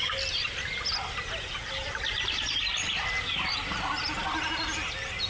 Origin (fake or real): real